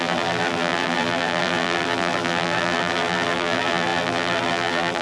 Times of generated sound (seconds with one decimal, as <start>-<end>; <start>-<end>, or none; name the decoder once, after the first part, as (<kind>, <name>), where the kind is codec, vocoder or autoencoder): 0.0-5.0 (vocoder, BigVGAN v2)